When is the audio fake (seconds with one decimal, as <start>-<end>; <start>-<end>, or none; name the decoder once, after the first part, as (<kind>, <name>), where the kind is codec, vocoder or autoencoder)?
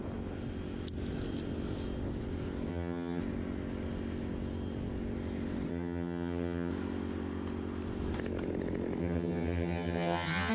2.7-3.2 (vocoder, HiFi-GAN); 5.7-6.7; 9.0-10.5